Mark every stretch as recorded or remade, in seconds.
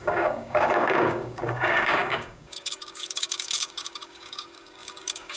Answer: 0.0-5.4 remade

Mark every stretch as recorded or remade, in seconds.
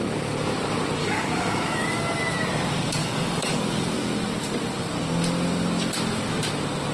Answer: 0.0-1.0 recorded; 1.0-2.0 remade; 2.0-3.0 recorded; 3.0-3.6 remade; 3.6-6.9 recorded